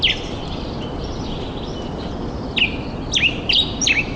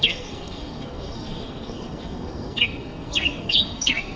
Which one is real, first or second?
first